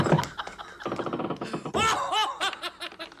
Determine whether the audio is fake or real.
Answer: real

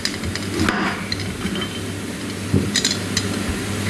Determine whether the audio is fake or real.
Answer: real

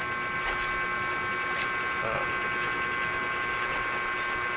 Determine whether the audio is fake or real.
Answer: real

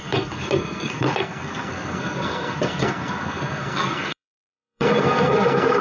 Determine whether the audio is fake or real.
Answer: fake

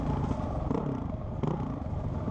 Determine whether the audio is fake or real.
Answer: real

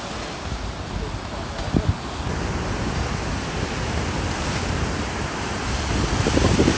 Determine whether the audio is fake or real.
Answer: real